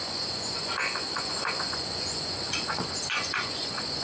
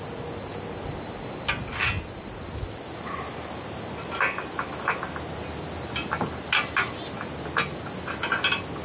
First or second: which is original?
second